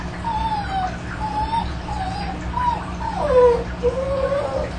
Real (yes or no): yes